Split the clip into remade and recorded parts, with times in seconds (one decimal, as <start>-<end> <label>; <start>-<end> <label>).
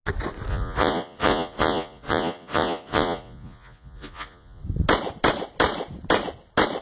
0.0-0.5 recorded; 0.5-4.6 remade; 4.6-6.8 recorded